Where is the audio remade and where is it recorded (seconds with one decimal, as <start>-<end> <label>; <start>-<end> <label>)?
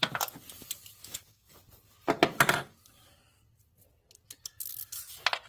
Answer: 0.0-1.0 recorded; 1.0-1.5 remade; 1.5-5.5 recorded